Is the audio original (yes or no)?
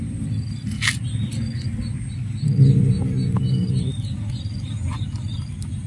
yes